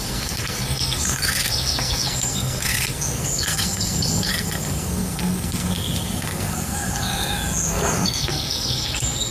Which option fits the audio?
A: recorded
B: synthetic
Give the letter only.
B